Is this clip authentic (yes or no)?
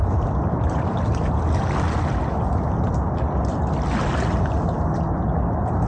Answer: yes